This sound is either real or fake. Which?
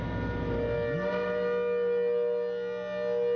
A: real